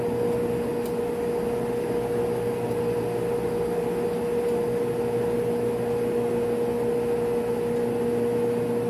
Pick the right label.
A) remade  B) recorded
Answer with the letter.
B